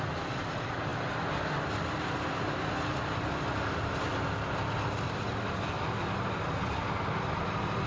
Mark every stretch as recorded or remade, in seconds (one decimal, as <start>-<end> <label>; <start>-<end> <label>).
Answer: 0.0-7.9 recorded